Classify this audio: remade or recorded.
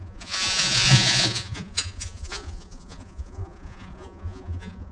remade